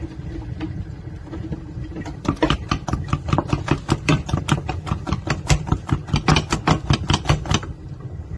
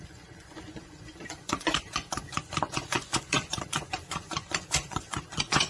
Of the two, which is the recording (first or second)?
first